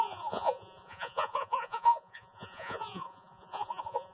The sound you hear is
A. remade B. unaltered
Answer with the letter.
A